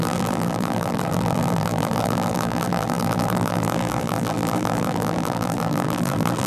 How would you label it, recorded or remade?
remade